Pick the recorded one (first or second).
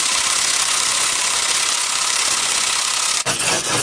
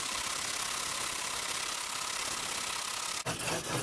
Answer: second